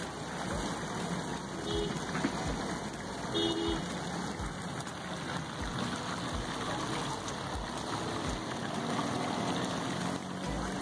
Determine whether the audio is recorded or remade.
recorded